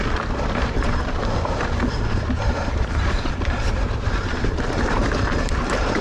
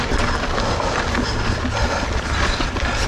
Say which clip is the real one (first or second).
second